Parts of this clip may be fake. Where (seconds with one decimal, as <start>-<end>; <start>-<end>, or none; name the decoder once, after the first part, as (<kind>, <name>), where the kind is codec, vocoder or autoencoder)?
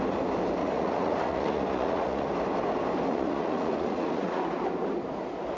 0.6-2.3 (vocoder, Vocos); 3.1-4.4